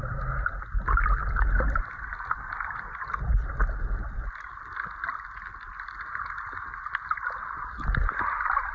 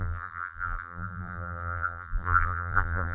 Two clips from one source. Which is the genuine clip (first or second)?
first